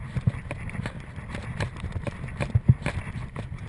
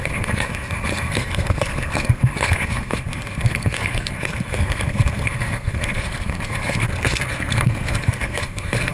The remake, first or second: second